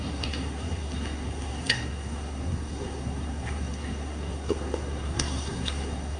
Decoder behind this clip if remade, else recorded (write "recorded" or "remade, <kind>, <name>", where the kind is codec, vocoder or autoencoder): remade, codec, SNAC